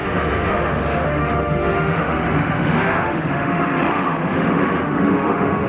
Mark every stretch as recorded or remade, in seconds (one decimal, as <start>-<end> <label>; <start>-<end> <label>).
0.0-5.7 remade